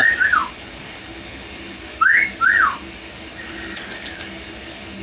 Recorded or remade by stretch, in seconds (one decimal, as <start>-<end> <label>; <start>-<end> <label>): 0.0-5.0 remade